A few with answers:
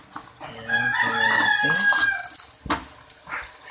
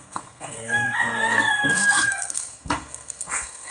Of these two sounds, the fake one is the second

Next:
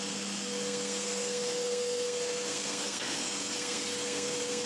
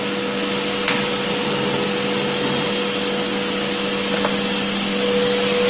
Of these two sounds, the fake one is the first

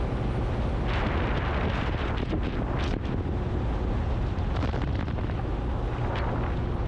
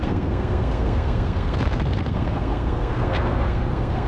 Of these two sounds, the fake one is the second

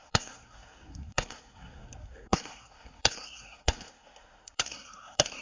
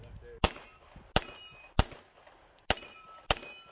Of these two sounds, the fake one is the first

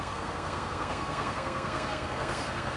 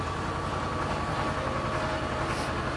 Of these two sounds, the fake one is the first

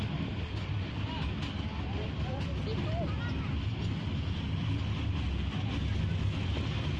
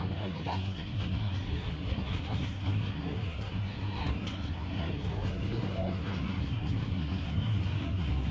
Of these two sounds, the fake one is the second